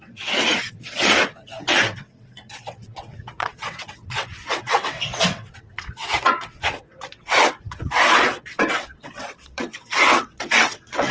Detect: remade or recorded remade